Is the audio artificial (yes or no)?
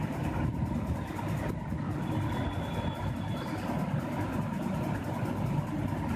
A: no